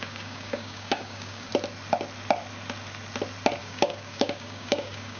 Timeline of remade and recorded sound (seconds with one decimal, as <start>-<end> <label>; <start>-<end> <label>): 0.0-1.5 remade; 1.5-3.6 recorded; 3.6-5.2 remade